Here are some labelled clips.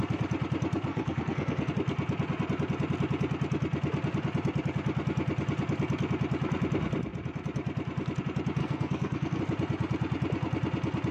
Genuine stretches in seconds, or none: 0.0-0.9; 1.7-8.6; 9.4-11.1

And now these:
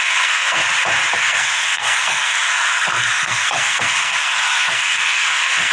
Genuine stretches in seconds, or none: 0.6-1.2

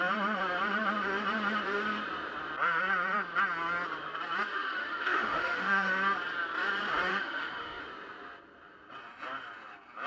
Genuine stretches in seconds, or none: 0.0-4.5; 5.9-7.1; 7.8-10.1